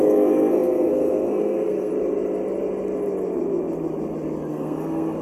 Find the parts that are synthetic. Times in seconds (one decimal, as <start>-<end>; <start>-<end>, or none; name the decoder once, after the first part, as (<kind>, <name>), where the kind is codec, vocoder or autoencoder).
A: 0.0-1.9 (codec, SNAC); 4.5-5.2